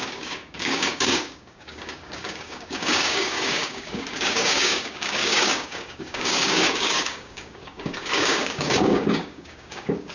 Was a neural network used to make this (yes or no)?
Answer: yes